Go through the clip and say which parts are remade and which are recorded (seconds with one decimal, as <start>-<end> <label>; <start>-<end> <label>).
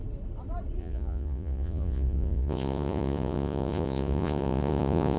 0.0-0.8 recorded; 0.8-5.2 remade